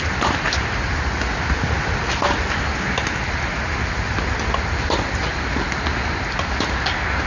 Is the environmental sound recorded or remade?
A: recorded